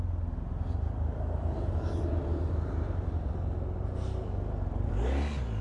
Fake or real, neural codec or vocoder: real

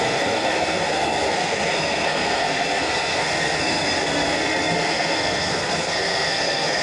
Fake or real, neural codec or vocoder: fake, codec, SNAC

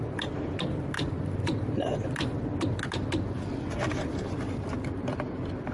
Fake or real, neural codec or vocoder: real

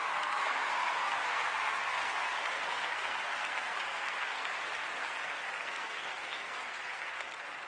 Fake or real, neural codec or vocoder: fake, codec, SNAC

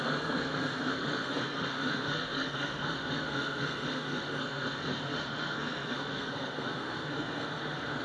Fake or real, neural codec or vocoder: fake, codec, SNAC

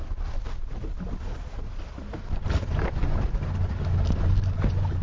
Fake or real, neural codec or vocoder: real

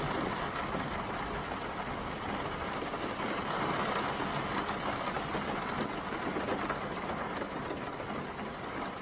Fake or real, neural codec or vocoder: real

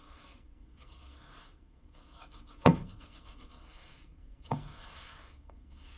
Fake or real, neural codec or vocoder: fake, codec, SNAC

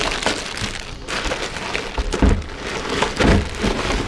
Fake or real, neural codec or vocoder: real